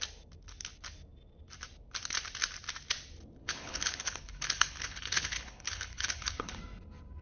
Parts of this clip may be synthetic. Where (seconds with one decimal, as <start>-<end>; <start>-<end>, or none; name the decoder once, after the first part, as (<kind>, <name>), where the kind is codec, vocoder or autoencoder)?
3.4-6.6 (codec, HILCodec)